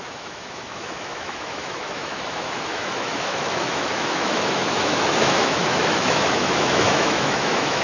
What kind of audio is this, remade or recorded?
remade